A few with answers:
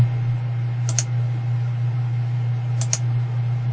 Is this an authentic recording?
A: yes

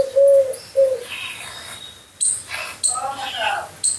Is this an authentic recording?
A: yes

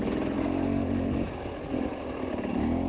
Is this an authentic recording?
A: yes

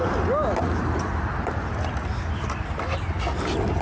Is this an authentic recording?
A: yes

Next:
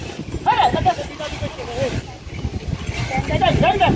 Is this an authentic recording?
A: yes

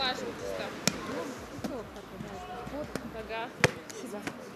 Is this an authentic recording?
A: yes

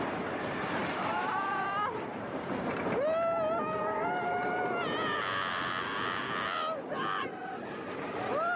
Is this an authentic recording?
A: yes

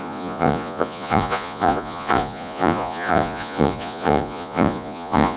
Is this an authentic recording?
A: no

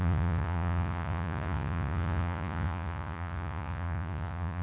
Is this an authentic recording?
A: no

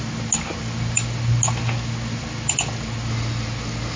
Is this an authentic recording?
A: yes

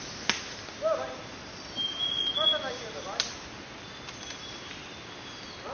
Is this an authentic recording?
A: yes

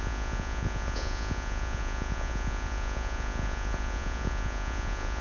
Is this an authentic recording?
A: no